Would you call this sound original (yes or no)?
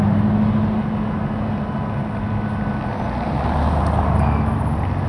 yes